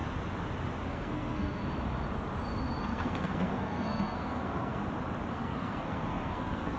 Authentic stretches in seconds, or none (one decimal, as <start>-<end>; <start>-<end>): 0.0-0.9; 1.6-2.8; 4.8-5.3